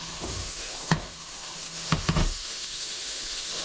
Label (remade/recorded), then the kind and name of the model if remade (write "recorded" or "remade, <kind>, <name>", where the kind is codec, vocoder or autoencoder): remade, autoencoder, DAC-VAE